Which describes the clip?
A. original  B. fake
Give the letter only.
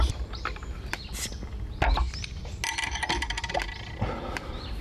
A